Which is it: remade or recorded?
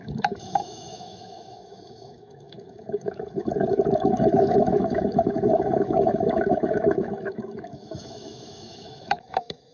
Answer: remade